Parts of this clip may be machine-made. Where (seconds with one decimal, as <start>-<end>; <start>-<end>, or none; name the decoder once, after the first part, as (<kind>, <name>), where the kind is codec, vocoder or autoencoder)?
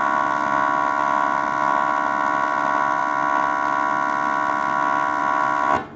none